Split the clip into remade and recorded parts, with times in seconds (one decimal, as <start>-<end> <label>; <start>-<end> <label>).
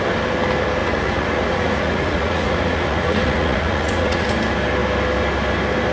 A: 0.0-0.8 recorded; 0.8-4.3 remade; 4.3-5.9 recorded